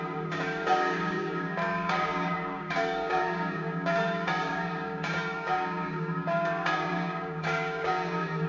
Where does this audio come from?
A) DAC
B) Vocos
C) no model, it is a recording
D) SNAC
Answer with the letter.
A